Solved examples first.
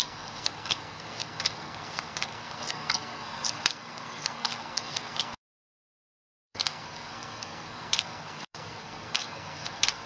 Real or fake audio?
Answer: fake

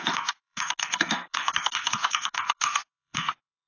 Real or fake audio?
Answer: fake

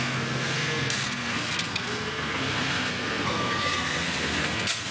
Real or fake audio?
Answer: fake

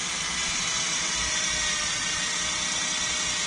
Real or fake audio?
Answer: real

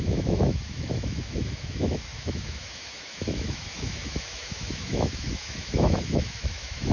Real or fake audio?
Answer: fake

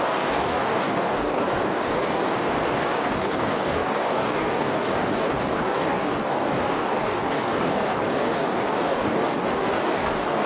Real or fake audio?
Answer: fake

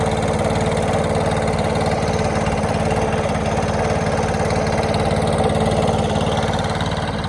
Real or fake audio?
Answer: real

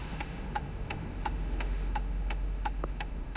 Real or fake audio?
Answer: fake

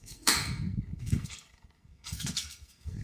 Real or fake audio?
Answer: fake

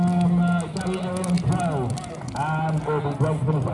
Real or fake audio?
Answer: real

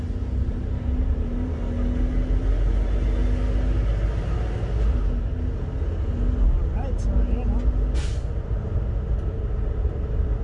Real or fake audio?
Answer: real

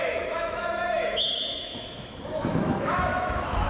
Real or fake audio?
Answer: fake